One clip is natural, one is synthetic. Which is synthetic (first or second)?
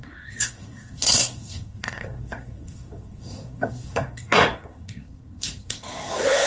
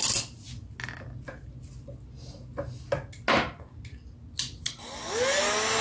first